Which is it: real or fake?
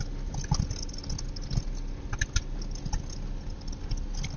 real